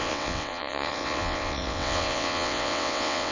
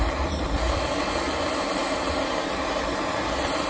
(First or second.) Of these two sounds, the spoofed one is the first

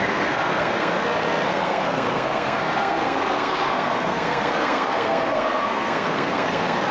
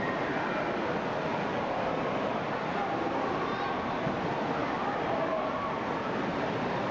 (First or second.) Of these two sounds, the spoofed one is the first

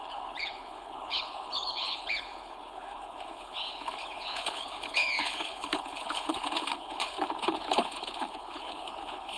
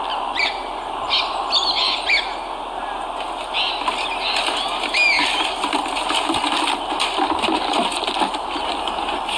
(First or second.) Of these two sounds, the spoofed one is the first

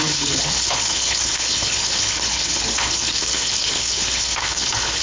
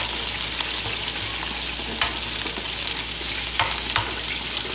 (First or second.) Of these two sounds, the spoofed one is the first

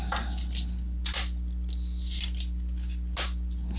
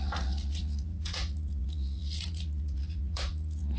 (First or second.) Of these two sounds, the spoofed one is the second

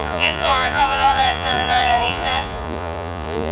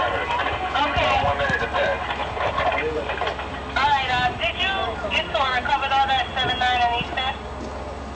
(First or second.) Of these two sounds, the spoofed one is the first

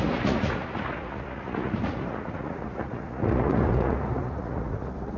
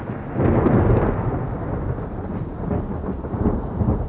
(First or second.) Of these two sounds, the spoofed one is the first